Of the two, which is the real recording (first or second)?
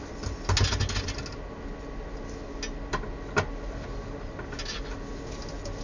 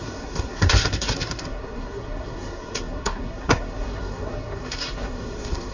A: first